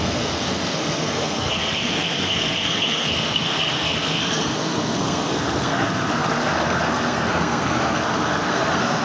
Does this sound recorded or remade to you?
remade